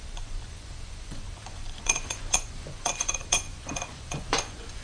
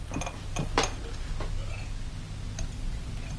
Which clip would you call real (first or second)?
second